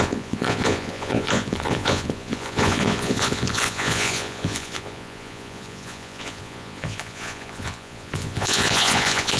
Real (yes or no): no